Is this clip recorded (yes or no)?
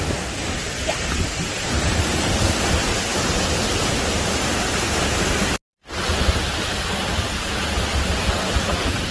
yes